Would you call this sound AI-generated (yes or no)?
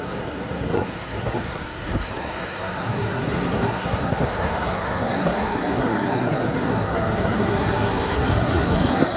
yes